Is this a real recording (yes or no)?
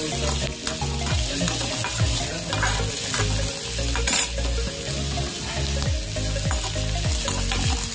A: yes